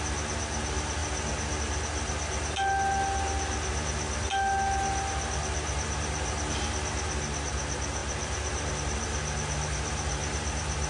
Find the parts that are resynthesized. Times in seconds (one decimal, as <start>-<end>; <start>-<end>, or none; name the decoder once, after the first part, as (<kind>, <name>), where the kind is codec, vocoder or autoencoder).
8.0-8.7 (vocoder, BigVGAN v2)